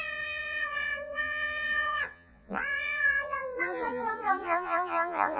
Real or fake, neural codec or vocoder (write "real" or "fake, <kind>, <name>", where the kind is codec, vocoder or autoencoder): fake, vocoder, Vocos